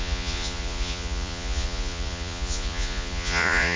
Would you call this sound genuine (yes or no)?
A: no